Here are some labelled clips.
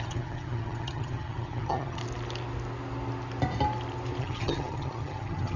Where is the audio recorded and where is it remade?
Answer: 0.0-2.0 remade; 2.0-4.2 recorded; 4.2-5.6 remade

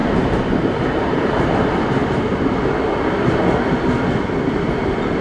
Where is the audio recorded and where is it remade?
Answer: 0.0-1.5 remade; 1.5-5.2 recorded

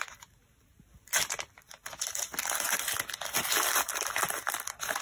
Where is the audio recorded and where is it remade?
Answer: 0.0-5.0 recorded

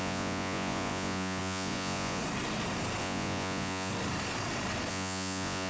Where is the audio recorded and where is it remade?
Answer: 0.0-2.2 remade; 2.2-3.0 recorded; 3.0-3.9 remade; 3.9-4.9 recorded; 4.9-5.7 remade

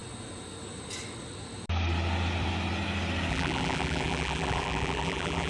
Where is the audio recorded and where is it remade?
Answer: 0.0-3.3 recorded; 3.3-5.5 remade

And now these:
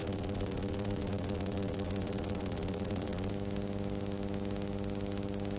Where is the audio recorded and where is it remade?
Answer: 0.0-3.3 remade; 3.3-5.6 recorded

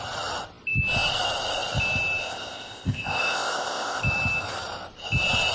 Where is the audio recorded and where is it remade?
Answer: 0.0-2.2 recorded; 2.2-4.0 remade; 4.0-5.5 recorded

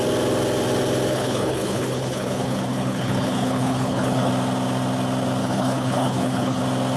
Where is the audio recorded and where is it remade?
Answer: 0.0-1.1 recorded; 1.1-4.3 remade; 4.3-5.4 recorded; 5.4-6.6 remade; 6.6-7.0 recorded